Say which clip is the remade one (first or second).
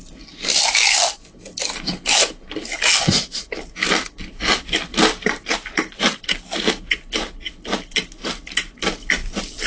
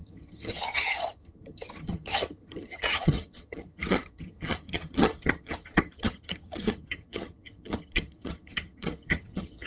second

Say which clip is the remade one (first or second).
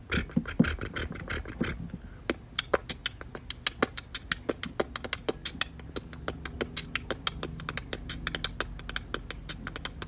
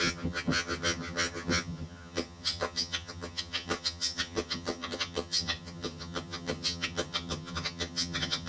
second